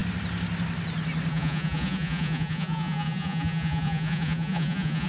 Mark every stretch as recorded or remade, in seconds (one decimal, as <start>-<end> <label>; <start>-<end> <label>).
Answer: 0.0-1.3 recorded; 1.3-5.1 remade